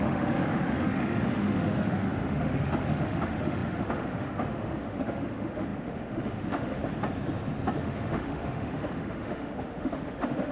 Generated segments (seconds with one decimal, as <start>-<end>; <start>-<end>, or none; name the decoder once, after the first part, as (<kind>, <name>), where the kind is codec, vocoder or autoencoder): 0.0-6.8 (autoencoder, DAC-VAE); 7.8-10.5